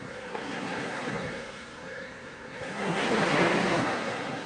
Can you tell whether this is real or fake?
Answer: fake